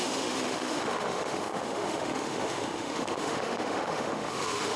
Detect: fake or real fake